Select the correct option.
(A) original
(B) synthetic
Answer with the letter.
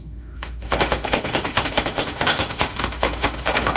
B